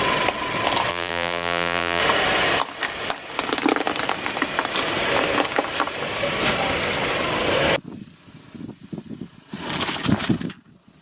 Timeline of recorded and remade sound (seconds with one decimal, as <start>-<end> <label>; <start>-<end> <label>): 0.0-0.9 recorded; 0.9-2.0 remade; 2.0-11.0 recorded